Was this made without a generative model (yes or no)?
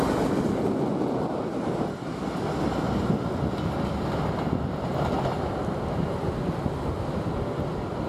yes